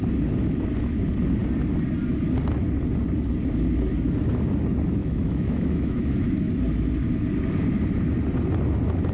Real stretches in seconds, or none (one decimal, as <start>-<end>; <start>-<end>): 0.0-5.0; 6.5-9.1